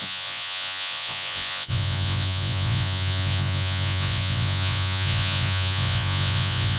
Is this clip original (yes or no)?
no